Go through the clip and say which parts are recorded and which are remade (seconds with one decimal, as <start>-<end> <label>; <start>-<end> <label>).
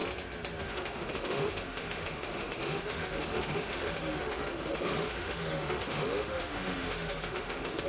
0.0-0.6 recorded; 0.6-7.9 remade